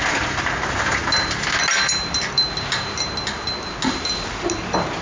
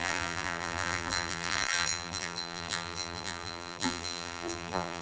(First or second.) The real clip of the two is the first